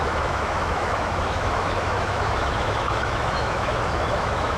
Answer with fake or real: fake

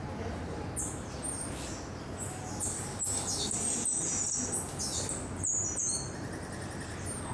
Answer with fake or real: real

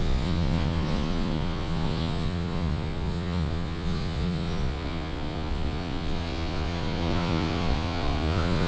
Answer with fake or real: fake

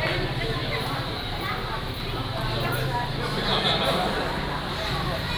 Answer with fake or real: real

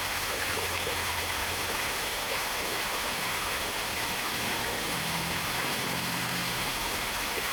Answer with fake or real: fake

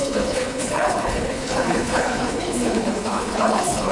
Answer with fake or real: fake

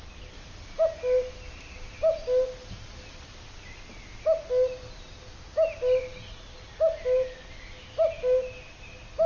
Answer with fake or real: real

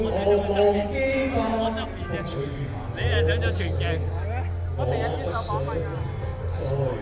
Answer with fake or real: real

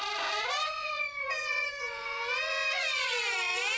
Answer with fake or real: fake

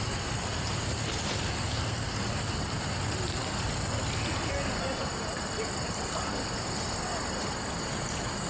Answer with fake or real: real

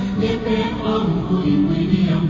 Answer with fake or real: fake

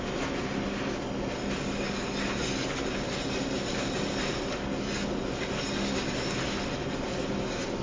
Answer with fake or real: real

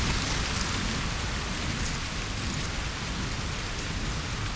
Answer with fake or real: real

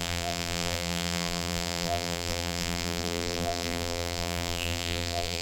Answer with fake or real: fake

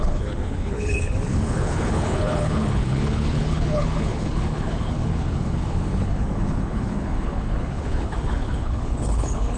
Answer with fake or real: fake